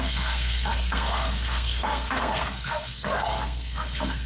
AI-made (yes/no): yes